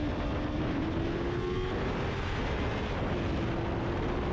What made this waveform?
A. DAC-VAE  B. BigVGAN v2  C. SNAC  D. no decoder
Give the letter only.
D